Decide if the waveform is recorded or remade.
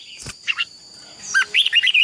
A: remade